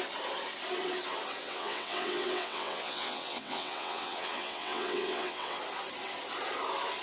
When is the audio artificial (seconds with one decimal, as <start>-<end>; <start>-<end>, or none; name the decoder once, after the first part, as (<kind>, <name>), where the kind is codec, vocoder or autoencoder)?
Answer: 1.4-5.6 (vocoder, WaveNeXt)